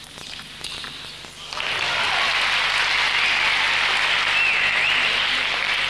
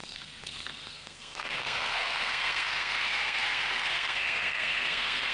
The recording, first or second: first